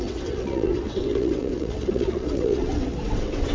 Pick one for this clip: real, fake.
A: fake